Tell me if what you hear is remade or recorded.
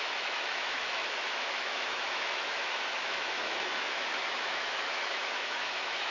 remade